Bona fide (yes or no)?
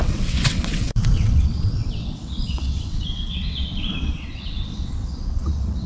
no